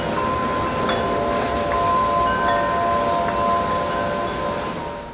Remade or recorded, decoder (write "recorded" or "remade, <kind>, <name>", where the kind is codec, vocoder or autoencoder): recorded